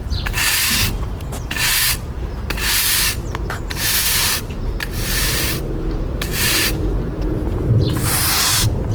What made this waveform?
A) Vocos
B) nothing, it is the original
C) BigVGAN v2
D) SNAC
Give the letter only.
C